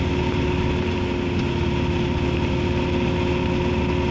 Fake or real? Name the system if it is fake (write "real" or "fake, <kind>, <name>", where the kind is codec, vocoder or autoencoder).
real